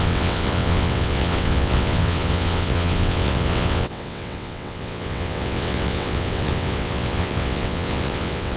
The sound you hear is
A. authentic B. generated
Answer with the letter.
B